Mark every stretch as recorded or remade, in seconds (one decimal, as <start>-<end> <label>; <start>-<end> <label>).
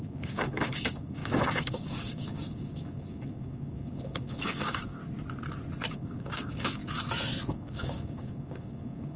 0.0-5.0 remade; 5.0-5.9 recorded; 5.9-6.8 remade; 6.8-7.5 recorded; 7.5-9.2 remade